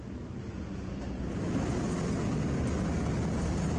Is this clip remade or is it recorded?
recorded